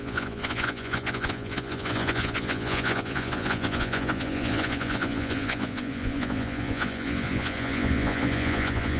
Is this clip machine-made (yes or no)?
yes